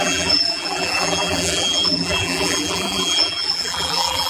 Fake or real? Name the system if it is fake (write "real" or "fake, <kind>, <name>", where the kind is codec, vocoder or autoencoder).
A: fake, vocoder, BigVGAN v2